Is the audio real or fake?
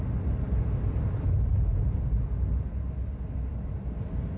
real